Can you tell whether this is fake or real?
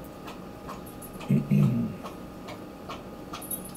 fake